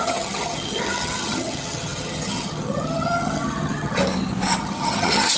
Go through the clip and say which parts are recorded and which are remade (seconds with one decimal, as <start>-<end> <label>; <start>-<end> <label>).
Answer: 0.0-4.0 remade; 4.0-4.6 recorded; 4.6-5.4 remade